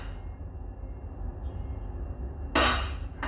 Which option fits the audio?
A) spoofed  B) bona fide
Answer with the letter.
B